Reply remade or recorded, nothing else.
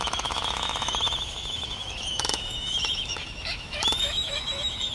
remade